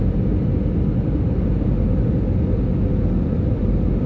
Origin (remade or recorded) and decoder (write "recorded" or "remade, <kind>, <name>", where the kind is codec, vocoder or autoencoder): recorded